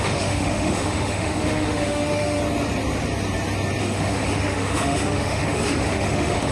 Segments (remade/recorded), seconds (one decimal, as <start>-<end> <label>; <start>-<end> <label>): 0.0-2.4 remade; 2.4-3.8 recorded; 3.8-6.5 remade